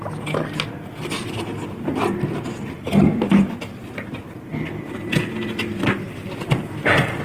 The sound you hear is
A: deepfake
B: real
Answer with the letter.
B